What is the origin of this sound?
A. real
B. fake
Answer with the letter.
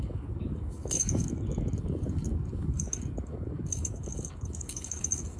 B